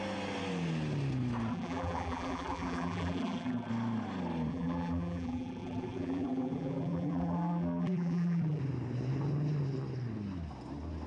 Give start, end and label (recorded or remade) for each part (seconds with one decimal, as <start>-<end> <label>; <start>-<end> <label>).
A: 0.0-1.5 recorded; 1.5-3.7 remade; 3.7-4.5 recorded; 4.5-8.6 remade; 8.6-11.1 recorded